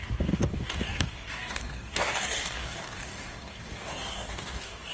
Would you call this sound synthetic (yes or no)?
yes